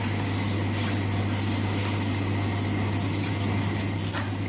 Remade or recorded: recorded